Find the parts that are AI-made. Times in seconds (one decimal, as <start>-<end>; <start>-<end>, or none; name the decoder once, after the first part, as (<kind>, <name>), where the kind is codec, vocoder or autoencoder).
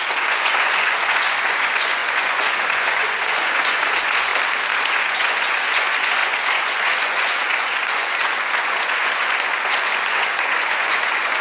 0.0-4.3 (vocoder, Vocos); 4.8-11.4